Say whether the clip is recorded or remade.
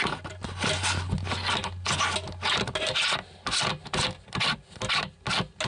recorded